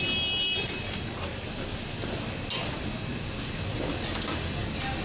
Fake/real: real